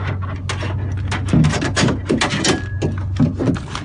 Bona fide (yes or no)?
yes